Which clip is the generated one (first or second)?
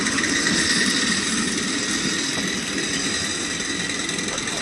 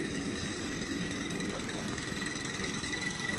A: second